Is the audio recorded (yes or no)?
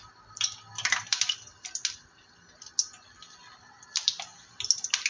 yes